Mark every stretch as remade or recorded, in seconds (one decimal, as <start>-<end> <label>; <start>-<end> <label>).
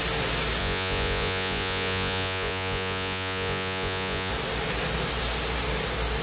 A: 0.0-0.6 recorded; 0.6-4.3 remade; 4.3-6.2 recorded